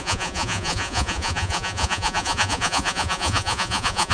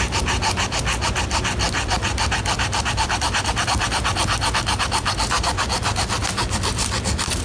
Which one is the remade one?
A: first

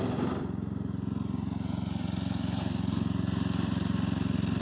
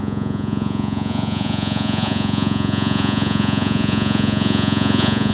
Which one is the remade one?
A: second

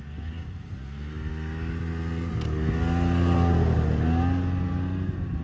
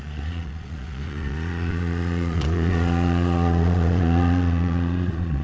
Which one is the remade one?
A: second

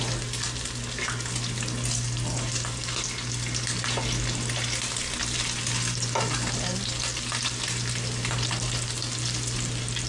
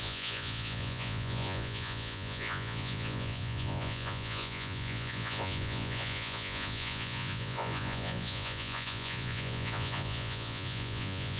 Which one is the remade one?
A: second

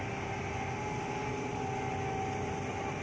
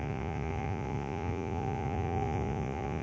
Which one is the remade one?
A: second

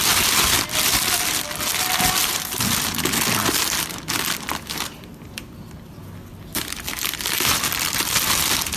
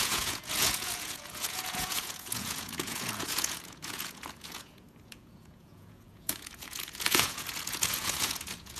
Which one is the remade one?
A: second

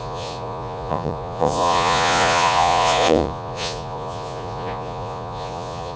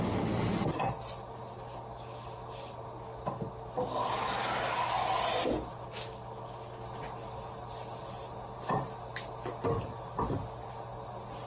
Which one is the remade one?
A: first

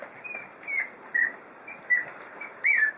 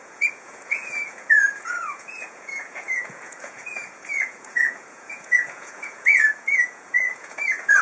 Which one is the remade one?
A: second